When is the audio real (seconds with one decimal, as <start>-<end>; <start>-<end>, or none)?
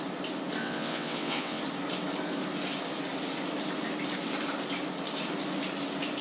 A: 0.0-0.6; 1.6-6.2